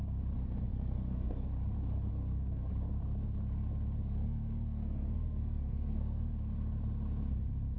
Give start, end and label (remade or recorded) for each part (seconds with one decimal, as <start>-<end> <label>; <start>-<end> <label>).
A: 0.0-0.7 recorded; 0.7-1.5 remade; 1.5-2.1 recorded; 2.1-2.7 remade; 2.7-4.2 recorded; 4.2-6.2 remade; 6.2-7.8 recorded